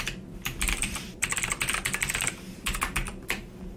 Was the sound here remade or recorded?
remade